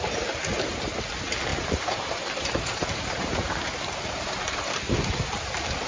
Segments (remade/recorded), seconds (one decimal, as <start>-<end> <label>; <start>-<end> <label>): 0.0-1.5 recorded; 1.5-4.8 remade; 4.8-5.9 recorded